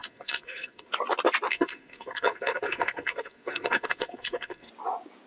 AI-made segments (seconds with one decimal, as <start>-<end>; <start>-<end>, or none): 0.0-0.9; 1.5-4.7

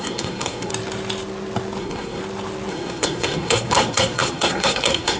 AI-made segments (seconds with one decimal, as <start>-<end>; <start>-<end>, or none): 0.0-0.7; 1.8-2.2; 2.7-5.2

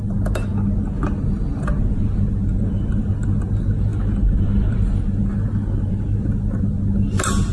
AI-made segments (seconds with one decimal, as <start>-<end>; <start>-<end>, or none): none

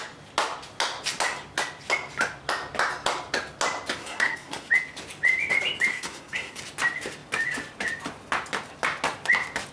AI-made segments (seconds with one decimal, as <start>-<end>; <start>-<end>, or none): 4.0-4.7; 5.9-6.6

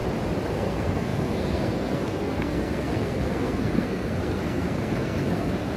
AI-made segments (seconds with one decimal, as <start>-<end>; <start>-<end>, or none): 0.5-5.8